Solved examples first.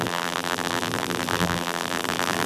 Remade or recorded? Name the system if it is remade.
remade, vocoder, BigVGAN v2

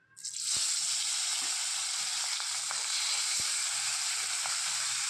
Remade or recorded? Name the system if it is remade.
recorded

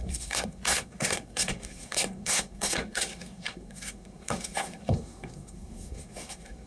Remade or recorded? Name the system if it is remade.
remade, codec, SNAC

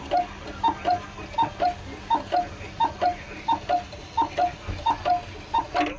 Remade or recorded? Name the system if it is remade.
recorded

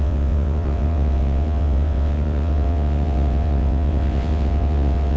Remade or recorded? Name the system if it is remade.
remade, vocoder, WaveNeXt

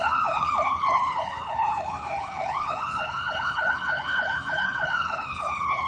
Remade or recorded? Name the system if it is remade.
remade, codec, HILCodec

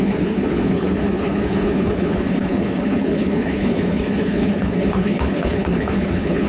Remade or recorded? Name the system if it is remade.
remade, codec, HILCodec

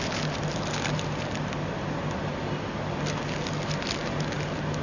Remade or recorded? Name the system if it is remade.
recorded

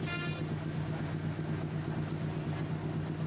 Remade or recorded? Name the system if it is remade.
recorded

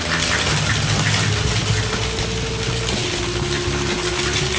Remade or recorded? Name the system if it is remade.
recorded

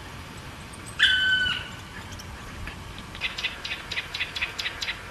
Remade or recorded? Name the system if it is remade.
remade, vocoder, BigVGAN v2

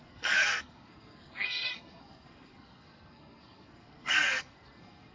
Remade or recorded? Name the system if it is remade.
remade, codec, SNAC